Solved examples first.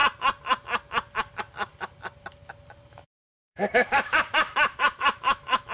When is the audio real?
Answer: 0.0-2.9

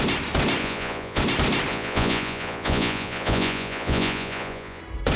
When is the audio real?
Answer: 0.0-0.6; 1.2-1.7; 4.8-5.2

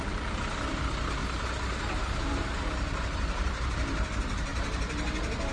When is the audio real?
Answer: 1.2-2.3; 4.5-5.5

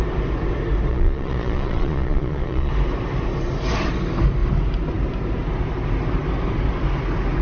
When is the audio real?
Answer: 0.0-0.9; 2.7-7.4